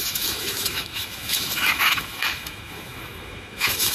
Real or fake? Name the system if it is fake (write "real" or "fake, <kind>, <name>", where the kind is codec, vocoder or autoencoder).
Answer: fake, autoencoder, DAC-VAE